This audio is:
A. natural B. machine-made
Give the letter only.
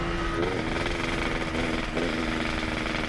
A